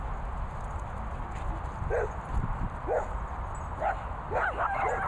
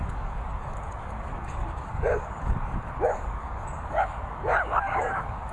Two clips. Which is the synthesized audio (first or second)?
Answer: second